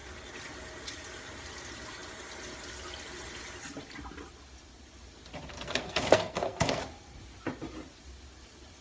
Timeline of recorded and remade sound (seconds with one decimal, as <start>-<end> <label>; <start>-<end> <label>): 0.0-5.5 recorded; 5.5-6.8 remade; 6.8-8.8 recorded